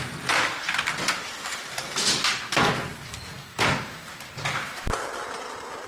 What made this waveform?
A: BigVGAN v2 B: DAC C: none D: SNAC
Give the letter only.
C